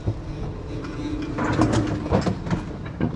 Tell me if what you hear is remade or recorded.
recorded